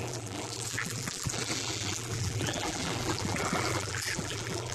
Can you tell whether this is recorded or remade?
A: remade